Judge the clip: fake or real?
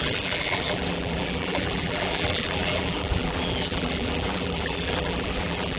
fake